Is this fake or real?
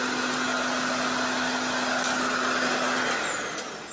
real